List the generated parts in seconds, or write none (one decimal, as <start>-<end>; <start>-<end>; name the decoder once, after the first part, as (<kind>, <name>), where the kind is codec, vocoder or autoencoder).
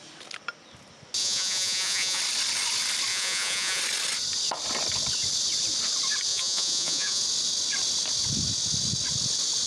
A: 1.2-2.2 (vocoder, Vocos); 3.1-3.8; 6.3-7.2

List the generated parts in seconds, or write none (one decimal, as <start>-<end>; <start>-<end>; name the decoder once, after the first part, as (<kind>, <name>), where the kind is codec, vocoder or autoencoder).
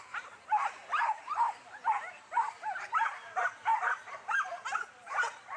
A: 0.0-3.7 (vocoder, BigVGAN v2); 4.9-5.6